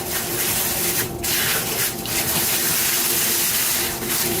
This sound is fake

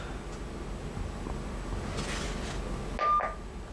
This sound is real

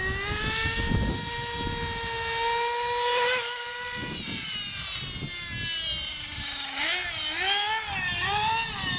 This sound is real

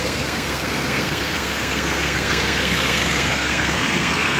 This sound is fake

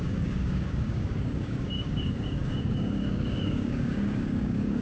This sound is fake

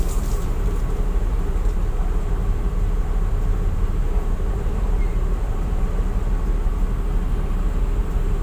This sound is fake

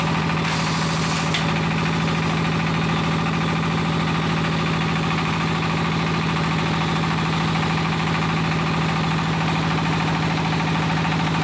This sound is real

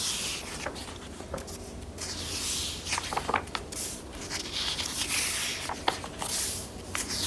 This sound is real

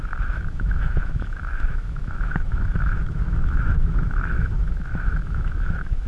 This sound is fake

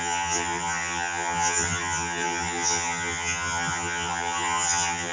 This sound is fake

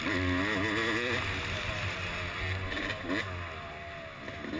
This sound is real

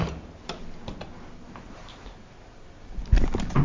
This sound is real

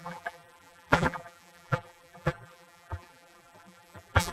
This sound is fake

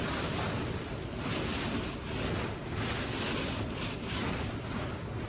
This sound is real